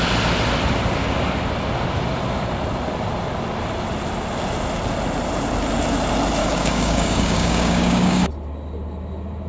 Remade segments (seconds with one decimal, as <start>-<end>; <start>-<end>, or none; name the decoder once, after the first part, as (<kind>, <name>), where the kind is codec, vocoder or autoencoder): 6.4-8.3 (codec, DAC)